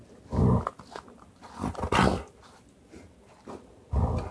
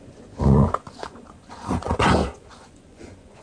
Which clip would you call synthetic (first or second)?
second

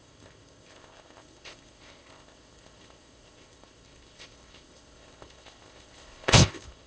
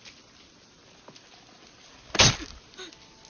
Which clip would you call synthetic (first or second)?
first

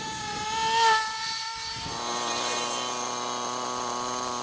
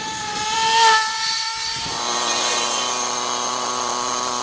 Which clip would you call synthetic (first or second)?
second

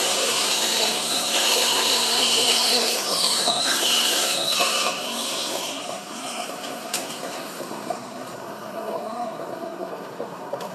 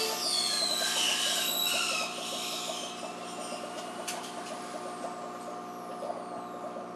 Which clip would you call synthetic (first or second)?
first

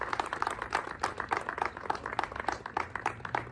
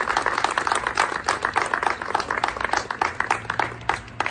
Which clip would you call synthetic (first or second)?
first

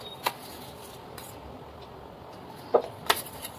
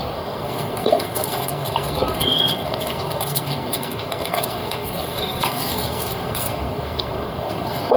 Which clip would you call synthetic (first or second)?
second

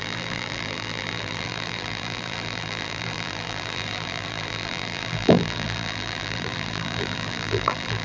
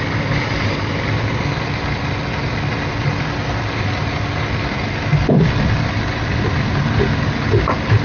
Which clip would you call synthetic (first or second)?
first